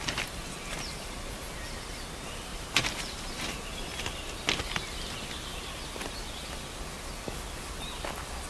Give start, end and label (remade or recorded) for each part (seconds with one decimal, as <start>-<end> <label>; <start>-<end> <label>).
0.0-2.5 recorded; 2.5-4.0 remade; 4.0-8.5 recorded